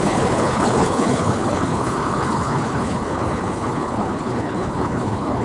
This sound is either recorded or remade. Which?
remade